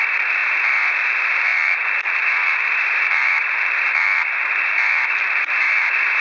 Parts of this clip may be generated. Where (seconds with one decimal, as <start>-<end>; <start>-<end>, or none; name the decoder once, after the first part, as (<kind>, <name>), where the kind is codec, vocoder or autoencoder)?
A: 0.0-6.2 (vocoder, BigVGAN v2)